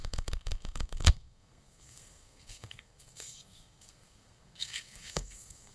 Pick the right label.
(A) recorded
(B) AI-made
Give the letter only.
B